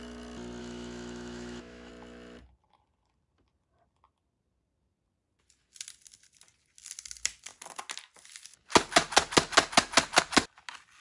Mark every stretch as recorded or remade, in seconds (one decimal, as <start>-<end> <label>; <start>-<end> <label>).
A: 0.0-0.6 recorded; 0.6-1.9 remade; 1.9-11.0 recorded